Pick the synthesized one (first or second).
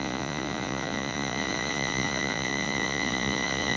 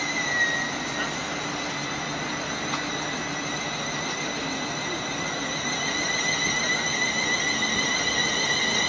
first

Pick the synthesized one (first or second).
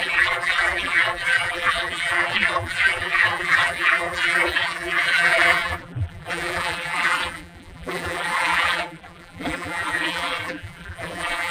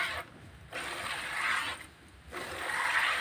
first